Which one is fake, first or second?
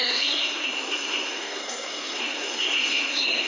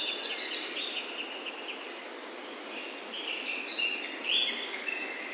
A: first